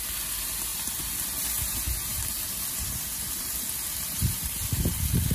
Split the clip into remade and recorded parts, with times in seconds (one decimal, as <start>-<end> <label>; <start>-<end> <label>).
0.0-0.7 recorded; 0.7-1.4 remade; 1.4-2.1 recorded; 2.1-5.3 remade